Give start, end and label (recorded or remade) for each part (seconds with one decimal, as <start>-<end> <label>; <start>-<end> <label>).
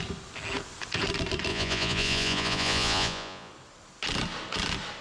0.0-1.5 recorded; 1.5-3.5 remade; 3.5-5.0 recorded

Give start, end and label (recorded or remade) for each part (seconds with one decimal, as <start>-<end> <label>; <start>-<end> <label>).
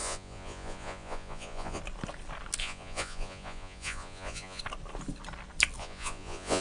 0.0-1.8 remade; 1.8-2.6 recorded; 2.6-4.6 remade; 4.6-5.8 recorded; 5.8-6.6 remade